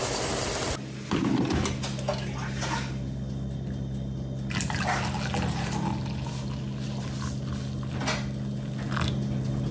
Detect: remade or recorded recorded